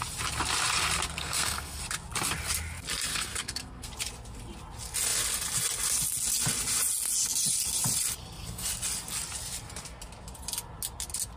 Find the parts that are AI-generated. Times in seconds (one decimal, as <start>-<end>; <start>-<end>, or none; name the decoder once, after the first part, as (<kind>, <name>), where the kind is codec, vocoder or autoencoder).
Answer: 1.2-1.8 (codec, SNAC); 3.1-3.9; 8.2-8.7